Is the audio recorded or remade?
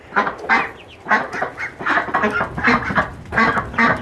recorded